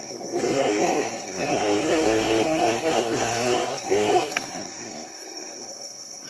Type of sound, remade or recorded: remade